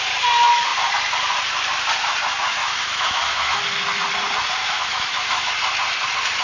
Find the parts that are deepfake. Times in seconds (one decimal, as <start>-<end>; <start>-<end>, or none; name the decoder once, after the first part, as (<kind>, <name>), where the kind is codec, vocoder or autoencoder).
2.6-3.6 (autoencoder, DAC-VAE); 4.6-5.5